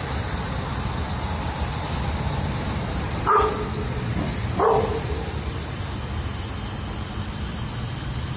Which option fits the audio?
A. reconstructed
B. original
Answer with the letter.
B